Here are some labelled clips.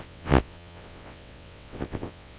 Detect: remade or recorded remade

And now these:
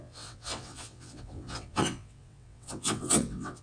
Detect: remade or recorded remade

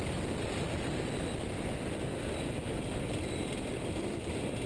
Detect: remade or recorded recorded